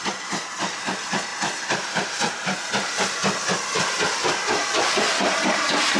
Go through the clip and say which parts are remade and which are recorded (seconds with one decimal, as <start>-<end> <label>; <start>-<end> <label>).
0.0-6.0 recorded